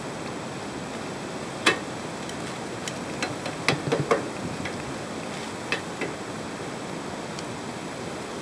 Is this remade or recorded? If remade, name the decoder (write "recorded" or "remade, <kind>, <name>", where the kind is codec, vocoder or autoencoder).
recorded